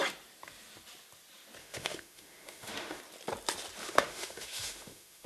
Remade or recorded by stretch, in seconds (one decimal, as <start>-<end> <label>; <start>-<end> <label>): 0.0-1.6 recorded; 1.6-3.0 remade; 3.0-3.8 recorded; 3.8-5.3 remade